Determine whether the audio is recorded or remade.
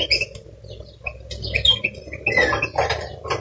recorded